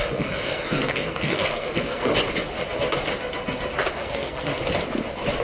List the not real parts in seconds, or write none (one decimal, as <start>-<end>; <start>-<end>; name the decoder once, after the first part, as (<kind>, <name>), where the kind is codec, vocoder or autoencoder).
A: 0.0-2.1 (codec, SNAC); 3.9-4.5